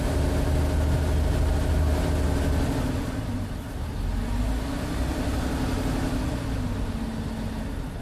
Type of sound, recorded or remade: recorded